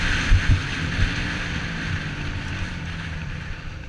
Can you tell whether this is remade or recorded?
recorded